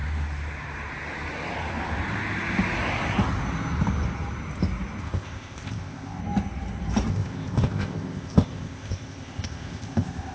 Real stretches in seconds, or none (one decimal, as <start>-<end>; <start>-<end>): 0.0-5.0; 6.2-7.1